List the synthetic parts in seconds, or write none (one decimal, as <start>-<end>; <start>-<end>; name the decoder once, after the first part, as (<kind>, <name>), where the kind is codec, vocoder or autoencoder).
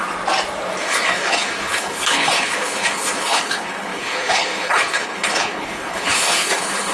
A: 0.8-6.9 (codec, HILCodec)